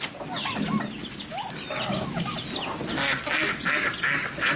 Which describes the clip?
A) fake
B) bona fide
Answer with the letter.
B